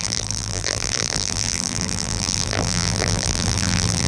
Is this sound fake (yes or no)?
yes